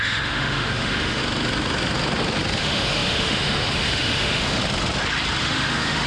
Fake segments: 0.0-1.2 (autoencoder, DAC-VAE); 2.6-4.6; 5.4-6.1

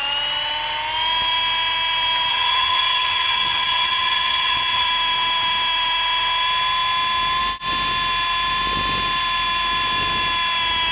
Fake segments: 2.3-4.9 (vocoder, HiFi-GAN)

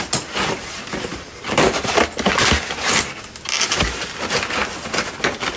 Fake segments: none

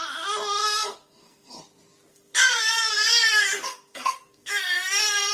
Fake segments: 0.6-1.6 (codec, SNAC); 2.1-5.3

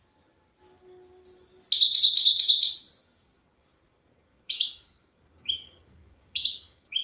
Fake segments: 3.0-7.0 (codec, DAC)